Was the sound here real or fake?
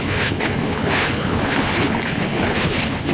fake